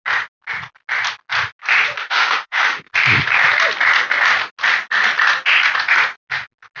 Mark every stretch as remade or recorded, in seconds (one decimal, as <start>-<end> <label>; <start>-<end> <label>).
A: 0.0-2.0 recorded; 2.0-2.9 remade; 2.9-6.8 recorded